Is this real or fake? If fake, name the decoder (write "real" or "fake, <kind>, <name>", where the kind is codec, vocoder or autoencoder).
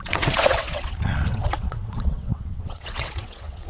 fake, vocoder, WaveNeXt